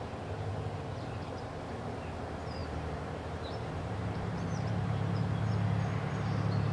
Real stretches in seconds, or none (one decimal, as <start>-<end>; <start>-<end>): 0.0-2.6; 5.5-6.7